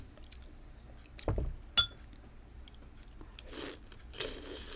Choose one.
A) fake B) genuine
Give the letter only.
B